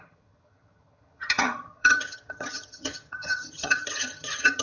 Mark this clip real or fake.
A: fake